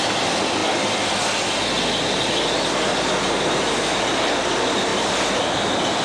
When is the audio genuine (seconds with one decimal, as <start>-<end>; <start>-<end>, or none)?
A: 0.0-6.0